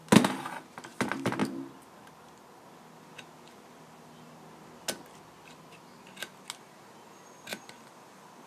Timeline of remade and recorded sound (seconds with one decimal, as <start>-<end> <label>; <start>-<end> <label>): 0.0-8.5 recorded